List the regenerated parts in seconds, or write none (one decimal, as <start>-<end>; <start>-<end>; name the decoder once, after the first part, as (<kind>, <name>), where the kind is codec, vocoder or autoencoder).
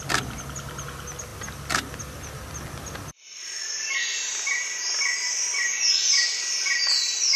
none